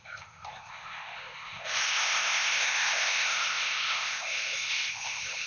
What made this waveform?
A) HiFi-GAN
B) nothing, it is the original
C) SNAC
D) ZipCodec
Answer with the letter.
D